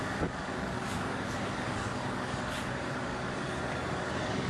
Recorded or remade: remade